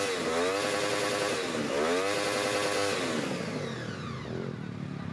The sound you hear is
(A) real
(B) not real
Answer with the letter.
A